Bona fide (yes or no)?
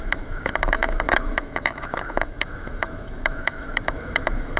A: no